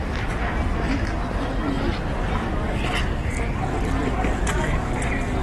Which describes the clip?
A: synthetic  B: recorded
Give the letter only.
B